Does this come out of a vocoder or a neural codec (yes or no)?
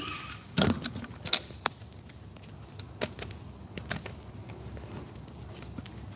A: no